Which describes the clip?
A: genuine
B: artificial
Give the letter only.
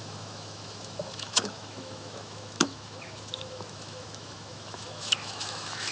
B